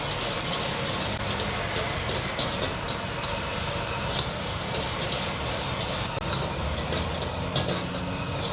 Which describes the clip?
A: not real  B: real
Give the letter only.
B